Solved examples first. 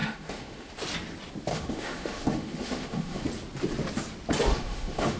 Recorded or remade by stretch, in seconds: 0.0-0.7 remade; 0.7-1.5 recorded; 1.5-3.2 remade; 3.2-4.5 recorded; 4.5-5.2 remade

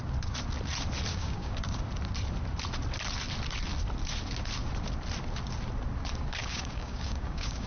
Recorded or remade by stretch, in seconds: 0.0-1.1 recorded; 1.1-1.8 remade; 1.8-6.4 recorded; 6.4-7.7 remade

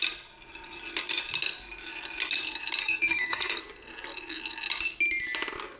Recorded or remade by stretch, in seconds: 0.0-2.8 recorded; 2.8-3.6 remade; 3.6-5.8 recorded

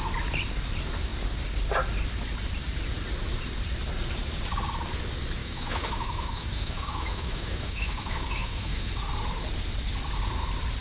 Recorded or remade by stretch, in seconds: 0.0-5.4 recorded; 5.4-8.9 remade; 8.9-10.8 recorded

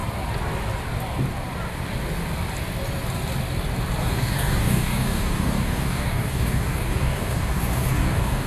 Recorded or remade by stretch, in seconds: 0.0-4.0 recorded; 4.0-8.5 remade